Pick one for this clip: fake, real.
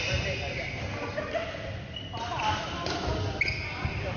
real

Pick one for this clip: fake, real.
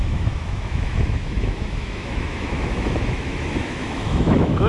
fake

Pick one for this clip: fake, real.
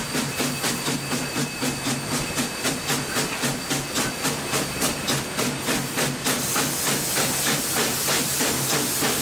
real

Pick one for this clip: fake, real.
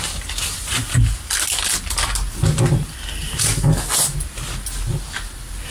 real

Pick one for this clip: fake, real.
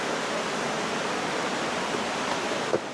real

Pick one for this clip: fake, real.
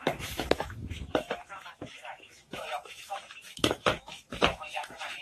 fake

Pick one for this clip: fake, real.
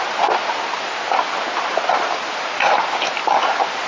real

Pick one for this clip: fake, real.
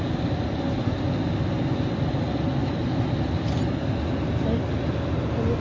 real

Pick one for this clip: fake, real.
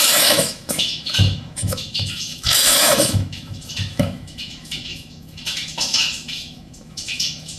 fake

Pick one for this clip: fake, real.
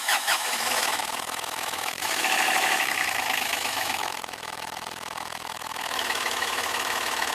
fake